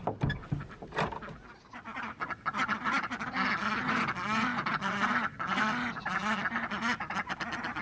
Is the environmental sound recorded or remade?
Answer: recorded